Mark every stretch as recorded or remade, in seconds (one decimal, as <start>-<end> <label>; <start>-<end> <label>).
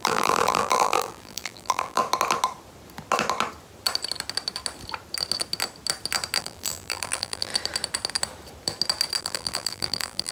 0.0-2.0 remade; 2.0-6.4 recorded; 6.4-7.5 remade; 7.5-9.2 recorded; 9.2-10.3 remade